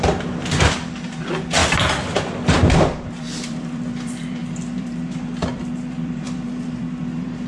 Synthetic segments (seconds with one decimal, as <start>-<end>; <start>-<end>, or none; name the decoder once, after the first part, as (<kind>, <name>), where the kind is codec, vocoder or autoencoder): 0.0-7.5 (vocoder, BigVGAN v2)